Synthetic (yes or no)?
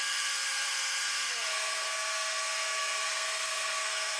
yes